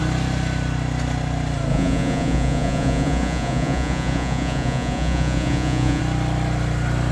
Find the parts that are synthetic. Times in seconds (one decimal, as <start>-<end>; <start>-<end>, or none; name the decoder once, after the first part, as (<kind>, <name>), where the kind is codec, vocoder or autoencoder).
1.7-6.0 (vocoder, Vocos)